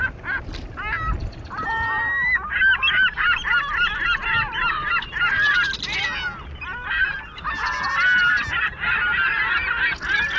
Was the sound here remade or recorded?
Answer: recorded